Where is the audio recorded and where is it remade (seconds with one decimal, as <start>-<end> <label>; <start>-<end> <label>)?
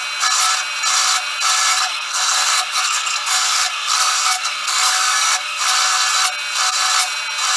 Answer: 0.0-1.7 recorded; 1.7-5.6 remade; 5.6-7.6 recorded